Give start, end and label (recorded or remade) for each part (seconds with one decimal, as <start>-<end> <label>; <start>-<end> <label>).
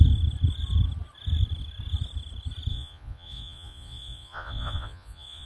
0.0-2.7 recorded; 2.7-5.5 remade